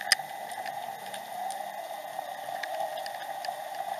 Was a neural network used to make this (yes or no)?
no